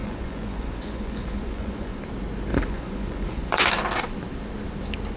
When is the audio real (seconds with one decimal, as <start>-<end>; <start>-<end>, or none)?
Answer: 2.0-2.5; 3.7-5.2